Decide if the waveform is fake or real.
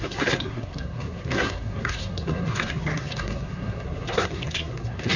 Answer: fake